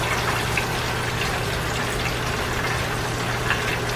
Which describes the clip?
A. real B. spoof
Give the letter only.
A